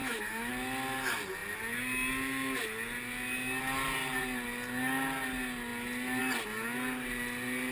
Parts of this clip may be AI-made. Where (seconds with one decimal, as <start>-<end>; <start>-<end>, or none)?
0.0-0.5